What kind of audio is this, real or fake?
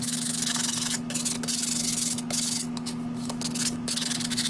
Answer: fake